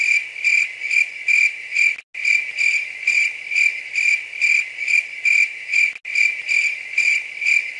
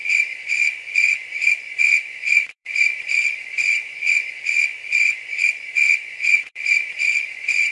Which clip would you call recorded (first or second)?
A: first